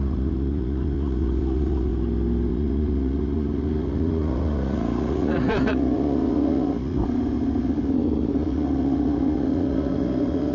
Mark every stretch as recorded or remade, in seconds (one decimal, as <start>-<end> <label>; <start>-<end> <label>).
0.0-1.9 remade; 1.9-2.5 recorded; 2.5-7.0 remade; 7.0-7.6 recorded; 7.6-10.5 remade